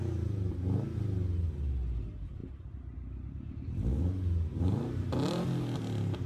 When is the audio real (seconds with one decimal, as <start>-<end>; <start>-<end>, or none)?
0.0-6.3